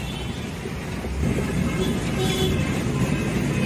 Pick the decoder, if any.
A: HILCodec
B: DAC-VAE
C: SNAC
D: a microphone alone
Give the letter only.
D